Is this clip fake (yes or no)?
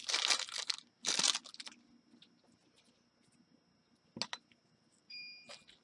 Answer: no